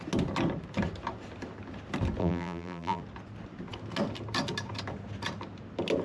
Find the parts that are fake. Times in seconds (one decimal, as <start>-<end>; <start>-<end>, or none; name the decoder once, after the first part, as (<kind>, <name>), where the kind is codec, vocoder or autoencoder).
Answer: 2.2-3.0 (vocoder, BigVGAN v2)